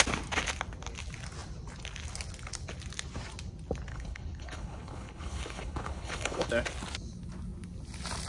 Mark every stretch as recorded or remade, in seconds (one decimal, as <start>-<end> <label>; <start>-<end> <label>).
0.0-3.9 recorded; 3.9-6.5 remade; 6.5-8.3 recorded